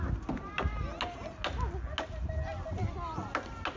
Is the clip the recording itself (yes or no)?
yes